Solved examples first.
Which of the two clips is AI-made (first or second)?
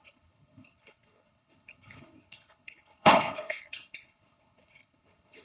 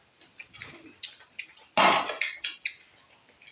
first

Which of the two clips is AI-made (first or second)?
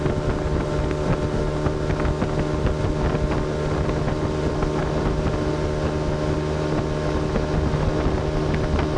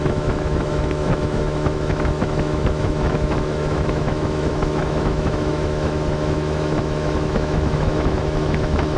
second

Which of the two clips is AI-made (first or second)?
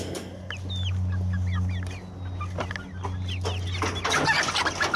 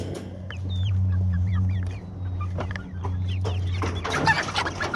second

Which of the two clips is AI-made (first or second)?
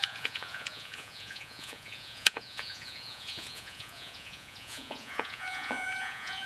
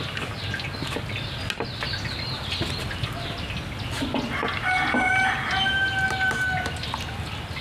first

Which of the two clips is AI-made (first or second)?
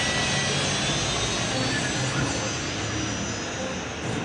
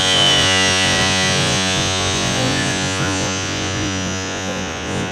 second